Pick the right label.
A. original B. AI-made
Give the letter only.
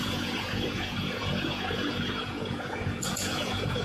B